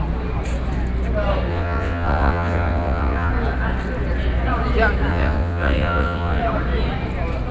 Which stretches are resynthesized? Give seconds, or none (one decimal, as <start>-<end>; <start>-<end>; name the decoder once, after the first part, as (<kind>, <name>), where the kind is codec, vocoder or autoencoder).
1.5-3.3 (vocoder, WaveNeXt); 5.1-6.4